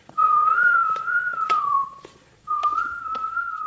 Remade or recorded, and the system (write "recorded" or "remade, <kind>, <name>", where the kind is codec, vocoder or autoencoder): remade, vocoder, Vocos